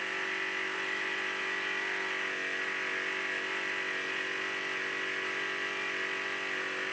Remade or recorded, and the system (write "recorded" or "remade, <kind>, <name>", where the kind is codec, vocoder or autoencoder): recorded